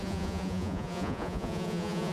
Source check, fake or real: fake